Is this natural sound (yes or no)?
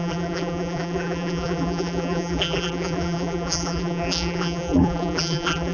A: no